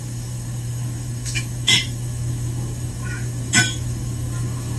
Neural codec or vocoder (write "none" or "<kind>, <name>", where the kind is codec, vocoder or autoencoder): autoencoder, DAC-VAE